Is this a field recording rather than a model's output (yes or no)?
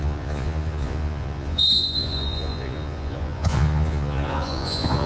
no